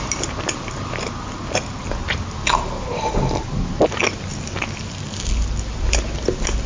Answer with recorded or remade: recorded